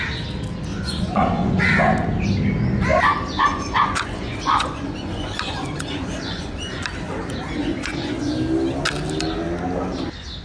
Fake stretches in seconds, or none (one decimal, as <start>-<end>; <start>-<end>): 0.7-1.8; 3.5-6.8; 7.6-8.3